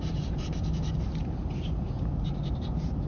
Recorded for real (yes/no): no